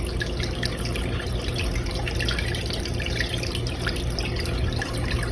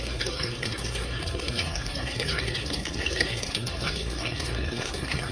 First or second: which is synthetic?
second